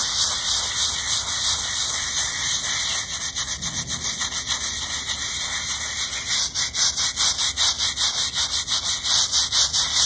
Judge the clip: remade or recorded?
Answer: recorded